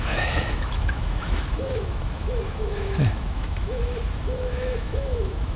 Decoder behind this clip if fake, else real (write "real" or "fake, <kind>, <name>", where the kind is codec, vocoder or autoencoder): fake, autoencoder, DAC-VAE